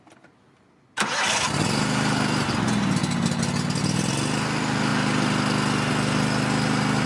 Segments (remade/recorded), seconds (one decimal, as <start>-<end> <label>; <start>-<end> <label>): 0.0-7.1 recorded